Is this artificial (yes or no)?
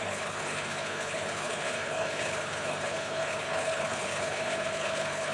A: yes